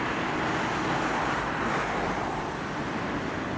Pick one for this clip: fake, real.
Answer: real